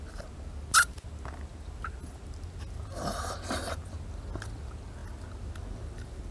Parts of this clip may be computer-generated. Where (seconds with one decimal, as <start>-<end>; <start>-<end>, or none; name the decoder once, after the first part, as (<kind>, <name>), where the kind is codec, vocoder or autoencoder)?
none